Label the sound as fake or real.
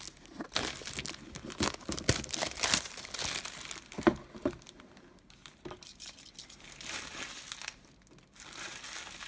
real